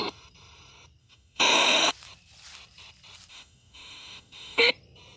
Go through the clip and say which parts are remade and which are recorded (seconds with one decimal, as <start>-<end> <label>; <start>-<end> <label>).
0.0-1.0 recorded; 1.0-1.9 remade; 1.9-3.3 recorded; 3.3-4.7 remade; 4.7-5.2 recorded